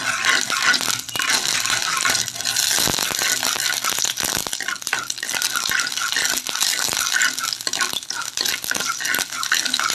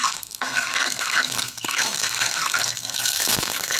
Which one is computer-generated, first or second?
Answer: second